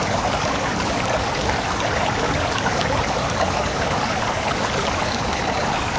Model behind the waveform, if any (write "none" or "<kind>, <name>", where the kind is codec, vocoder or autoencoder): codec, DAC